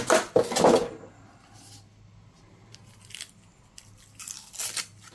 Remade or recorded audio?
recorded